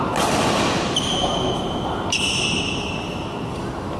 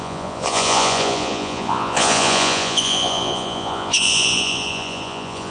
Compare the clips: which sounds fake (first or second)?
second